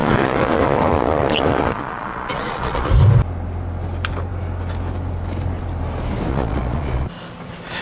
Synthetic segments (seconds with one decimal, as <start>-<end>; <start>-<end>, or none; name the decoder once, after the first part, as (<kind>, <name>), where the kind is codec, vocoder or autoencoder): 0.0-2.9 (vocoder, Vocos); 6.3-7.1